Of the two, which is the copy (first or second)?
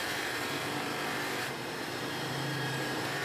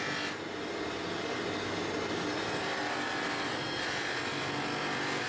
first